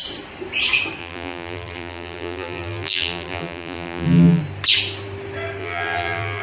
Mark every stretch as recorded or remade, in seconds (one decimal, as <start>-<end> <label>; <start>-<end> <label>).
0.0-1.0 recorded; 1.0-4.4 remade; 4.4-5.6 recorded; 5.6-6.4 remade